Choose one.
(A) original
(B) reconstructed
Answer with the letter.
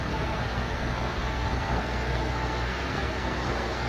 B